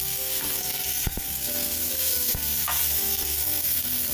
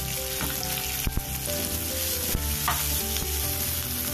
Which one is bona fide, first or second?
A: second